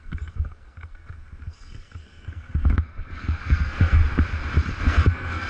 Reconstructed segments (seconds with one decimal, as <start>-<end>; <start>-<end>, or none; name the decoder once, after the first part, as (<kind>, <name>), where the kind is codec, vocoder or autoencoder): 0.0-4.0 (codec, SNAC); 4.8-5.5